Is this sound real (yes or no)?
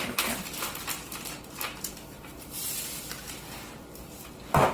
yes